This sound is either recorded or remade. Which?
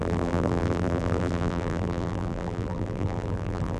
remade